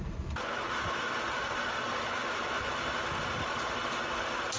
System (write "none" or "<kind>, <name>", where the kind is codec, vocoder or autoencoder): none